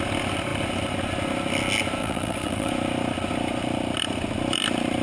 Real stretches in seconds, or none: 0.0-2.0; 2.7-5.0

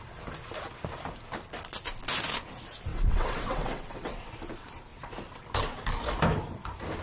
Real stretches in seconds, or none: 0.0-2.9; 4.3-7.0

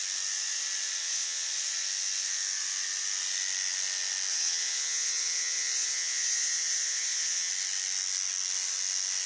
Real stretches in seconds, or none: 0.0-1.0; 1.5-4.3; 7.5-9.3

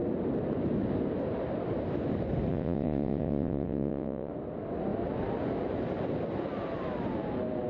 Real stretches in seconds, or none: 0.0-2.5; 4.3-7.7

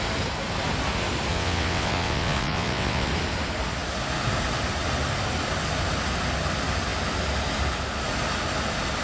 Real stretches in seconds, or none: 0.0-1.3; 3.1-9.0